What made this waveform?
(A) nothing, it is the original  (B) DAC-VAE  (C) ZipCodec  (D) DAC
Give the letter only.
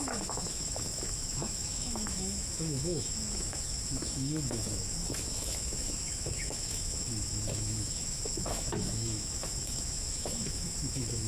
B